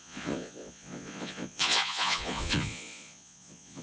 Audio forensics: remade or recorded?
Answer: remade